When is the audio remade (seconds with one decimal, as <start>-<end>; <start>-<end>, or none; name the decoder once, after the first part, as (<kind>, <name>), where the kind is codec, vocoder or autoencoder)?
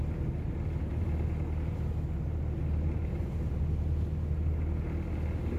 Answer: 3.0-3.6 (vocoder, BigVGAN v2)